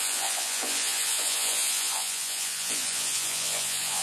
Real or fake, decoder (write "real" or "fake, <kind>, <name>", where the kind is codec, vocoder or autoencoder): fake, vocoder, Vocos